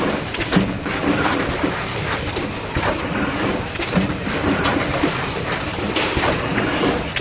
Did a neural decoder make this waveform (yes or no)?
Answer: yes